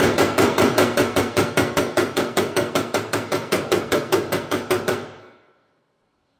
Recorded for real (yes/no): no